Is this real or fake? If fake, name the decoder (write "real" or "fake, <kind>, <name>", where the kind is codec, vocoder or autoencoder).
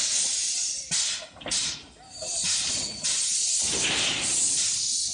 real